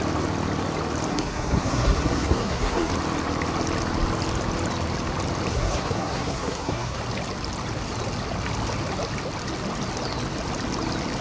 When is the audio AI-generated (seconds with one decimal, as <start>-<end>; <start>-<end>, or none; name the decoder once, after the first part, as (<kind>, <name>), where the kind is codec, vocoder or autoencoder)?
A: 1.1-2.9 (codec, SNAC); 5.5-7.0